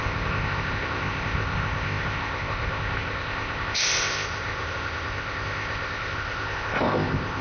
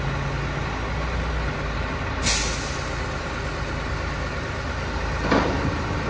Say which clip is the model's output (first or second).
first